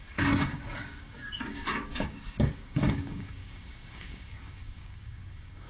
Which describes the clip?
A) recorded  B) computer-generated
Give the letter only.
B